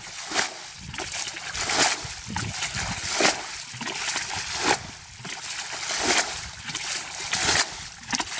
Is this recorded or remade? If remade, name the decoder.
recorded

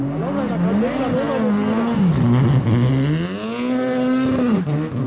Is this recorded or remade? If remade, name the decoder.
recorded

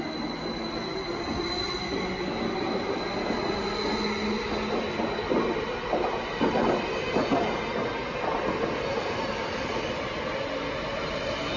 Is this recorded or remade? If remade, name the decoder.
recorded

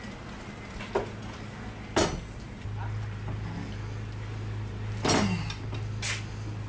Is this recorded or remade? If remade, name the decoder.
recorded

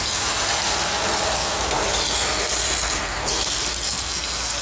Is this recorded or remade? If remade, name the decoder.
recorded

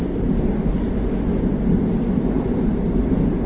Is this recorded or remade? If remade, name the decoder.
recorded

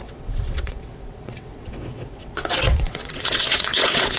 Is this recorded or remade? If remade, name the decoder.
remade, vocoder, WaveNeXt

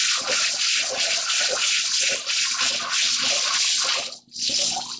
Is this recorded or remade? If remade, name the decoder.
recorded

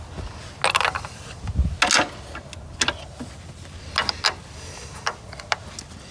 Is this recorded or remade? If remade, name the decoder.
recorded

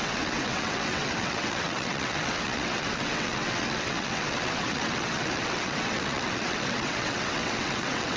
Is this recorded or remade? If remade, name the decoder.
remade, vocoder, WaveNeXt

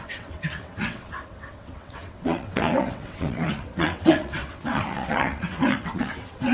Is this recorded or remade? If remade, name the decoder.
remade, vocoder, WaveNeXt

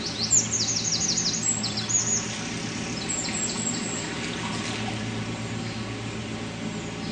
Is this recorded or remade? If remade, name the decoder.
recorded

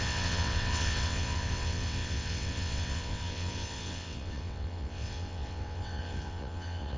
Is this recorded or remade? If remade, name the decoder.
remade, vocoder, WaveNeXt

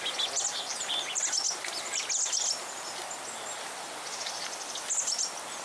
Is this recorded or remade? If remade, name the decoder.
recorded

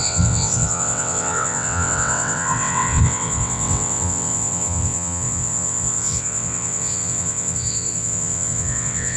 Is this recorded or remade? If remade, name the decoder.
remade, vocoder, WaveNeXt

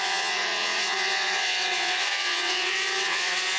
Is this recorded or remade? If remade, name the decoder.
remade, vocoder, WaveNeXt